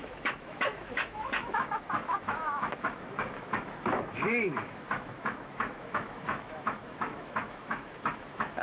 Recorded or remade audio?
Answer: remade